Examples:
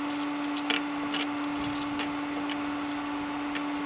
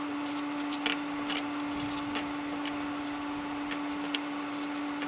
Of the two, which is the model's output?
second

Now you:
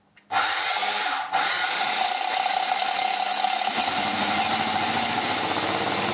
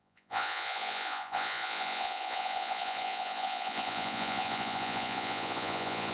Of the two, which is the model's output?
second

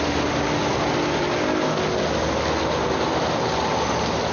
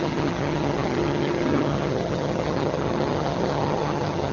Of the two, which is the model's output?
second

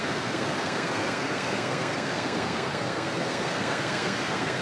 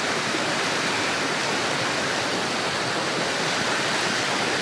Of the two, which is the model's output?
first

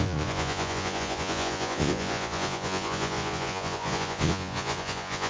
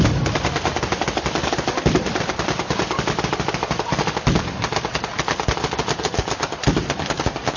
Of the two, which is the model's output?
first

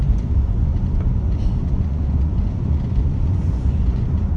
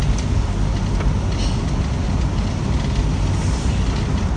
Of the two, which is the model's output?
first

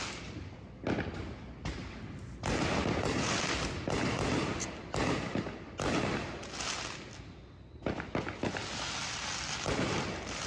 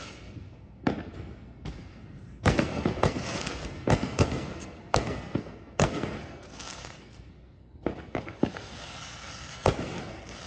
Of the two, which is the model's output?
second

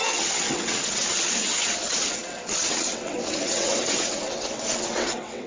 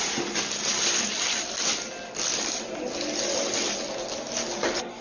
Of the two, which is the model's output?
first